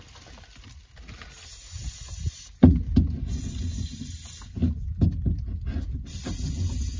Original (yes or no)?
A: yes